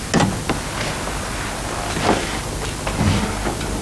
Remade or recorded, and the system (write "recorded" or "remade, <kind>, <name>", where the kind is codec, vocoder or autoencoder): recorded